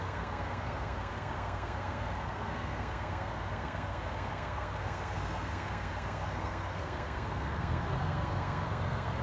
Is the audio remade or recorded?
remade